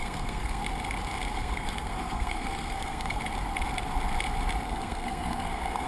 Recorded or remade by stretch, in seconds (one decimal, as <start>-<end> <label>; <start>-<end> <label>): 0.0-0.6 remade; 0.6-1.3 recorded; 1.3-3.2 remade; 3.2-4.7 recorded; 4.7-5.9 remade